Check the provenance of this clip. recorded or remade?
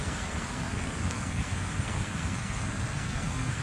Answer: remade